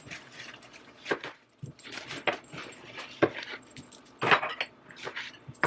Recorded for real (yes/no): yes